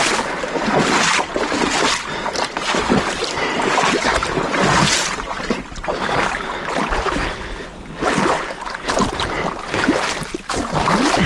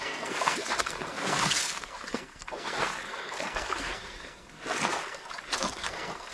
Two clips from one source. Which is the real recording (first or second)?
first